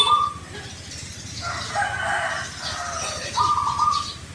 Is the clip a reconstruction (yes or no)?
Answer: no